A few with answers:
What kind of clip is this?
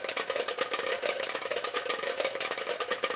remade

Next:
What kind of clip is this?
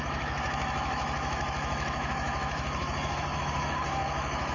remade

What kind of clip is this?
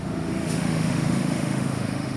remade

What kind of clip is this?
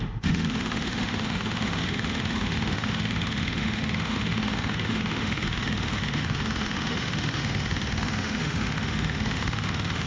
remade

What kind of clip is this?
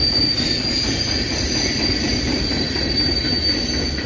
recorded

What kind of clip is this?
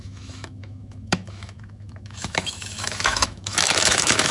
remade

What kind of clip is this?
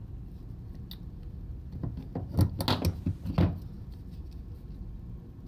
recorded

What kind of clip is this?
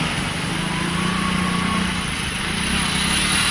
recorded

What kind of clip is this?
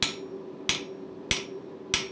recorded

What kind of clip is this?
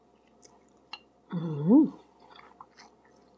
recorded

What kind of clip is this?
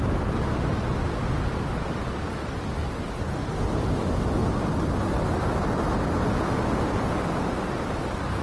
recorded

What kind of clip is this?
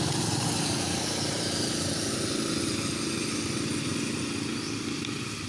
recorded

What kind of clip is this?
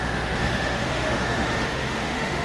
remade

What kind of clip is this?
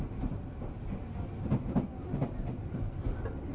recorded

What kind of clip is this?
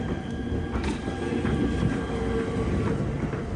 recorded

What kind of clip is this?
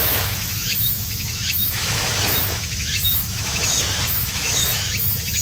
remade